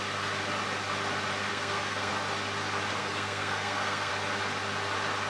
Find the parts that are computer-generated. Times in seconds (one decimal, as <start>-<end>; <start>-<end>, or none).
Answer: 1.5-2.1; 3.0-4.1